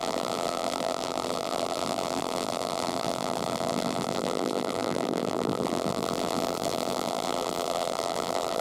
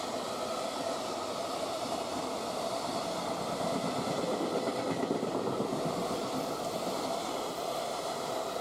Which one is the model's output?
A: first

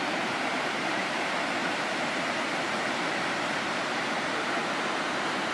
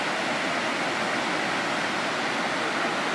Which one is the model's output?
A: first